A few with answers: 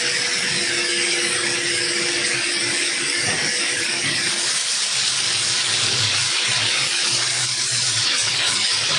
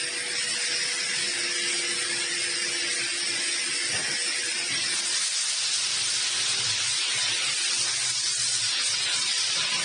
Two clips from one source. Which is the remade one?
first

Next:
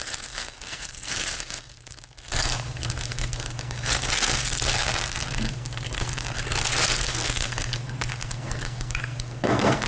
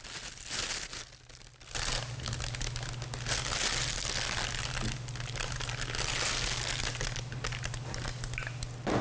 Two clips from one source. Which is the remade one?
first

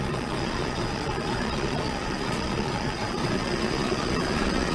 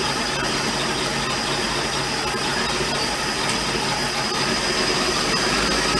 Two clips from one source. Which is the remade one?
first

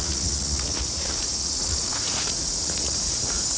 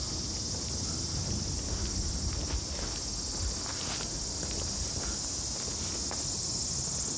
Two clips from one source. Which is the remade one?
first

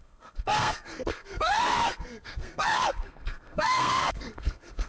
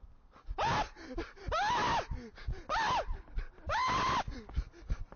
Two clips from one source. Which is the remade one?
first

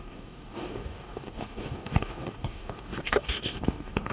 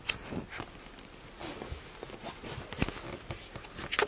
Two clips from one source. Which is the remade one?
first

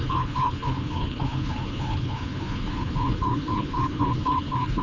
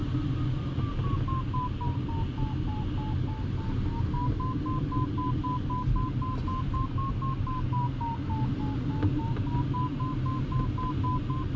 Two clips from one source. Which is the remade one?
first